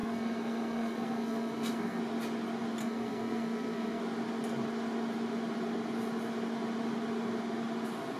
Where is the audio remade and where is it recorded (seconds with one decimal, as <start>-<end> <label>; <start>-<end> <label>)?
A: 0.0-2.0 remade; 2.0-2.8 recorded; 2.8-4.0 remade; 4.0-8.2 recorded